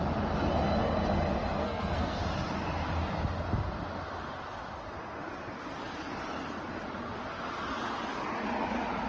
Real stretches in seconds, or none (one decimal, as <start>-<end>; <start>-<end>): 0.0-1.6; 2.2-9.1

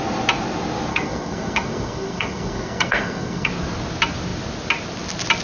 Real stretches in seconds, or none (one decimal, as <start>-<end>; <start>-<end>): 0.0-0.9; 3.5-5.4

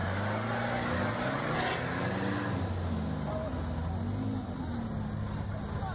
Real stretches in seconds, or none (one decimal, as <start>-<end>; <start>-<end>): 0.0-5.9

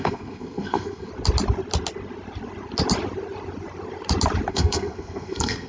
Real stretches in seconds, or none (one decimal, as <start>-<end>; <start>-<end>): 1.1-4.5

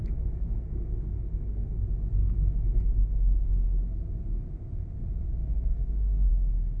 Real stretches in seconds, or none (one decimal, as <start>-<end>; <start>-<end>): 1.8-2.2; 3.5-5.4; 6.3-6.8

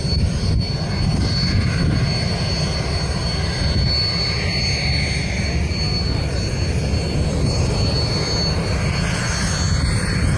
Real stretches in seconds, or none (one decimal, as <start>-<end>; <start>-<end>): 0.0-10.4